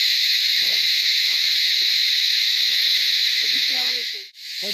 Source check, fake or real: fake